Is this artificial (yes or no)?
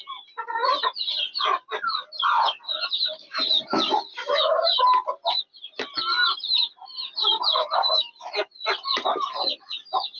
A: no